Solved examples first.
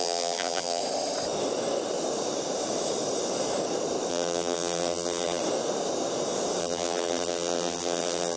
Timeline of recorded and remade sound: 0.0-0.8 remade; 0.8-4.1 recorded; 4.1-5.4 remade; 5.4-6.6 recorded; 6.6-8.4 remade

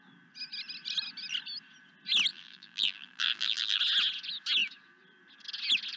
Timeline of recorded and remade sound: 0.0-2.3 recorded; 2.3-3.8 remade; 3.8-6.0 recorded

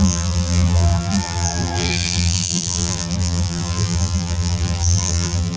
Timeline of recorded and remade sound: 0.0-5.6 remade